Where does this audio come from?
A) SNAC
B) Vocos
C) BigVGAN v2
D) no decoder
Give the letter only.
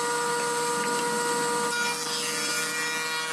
D